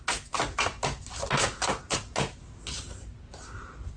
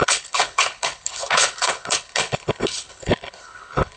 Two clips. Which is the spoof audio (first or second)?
second